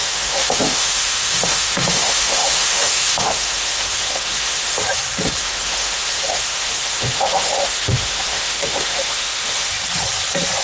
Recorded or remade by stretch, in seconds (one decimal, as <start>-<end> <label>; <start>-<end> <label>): 0.0-4.8 remade; 4.8-5.4 recorded; 5.4-9.7 remade; 9.7-10.6 recorded